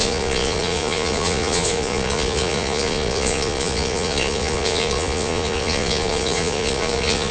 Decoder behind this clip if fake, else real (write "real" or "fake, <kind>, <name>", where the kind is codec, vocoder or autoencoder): fake, vocoder, Vocos